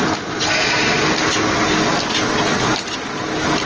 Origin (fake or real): real